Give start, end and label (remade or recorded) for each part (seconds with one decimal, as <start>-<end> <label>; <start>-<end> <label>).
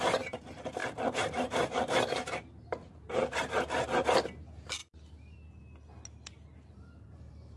0.0-4.8 remade; 4.8-6.7 recorded; 6.7-7.6 remade